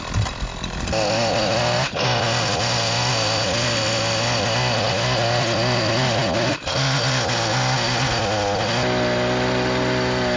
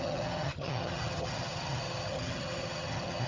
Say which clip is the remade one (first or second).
second